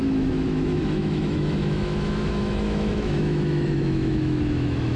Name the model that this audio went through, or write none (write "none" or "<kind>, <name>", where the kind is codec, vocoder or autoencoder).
autoencoder, DAC-VAE